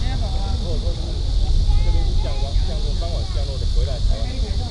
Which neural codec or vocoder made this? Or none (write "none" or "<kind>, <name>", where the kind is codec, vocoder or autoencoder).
none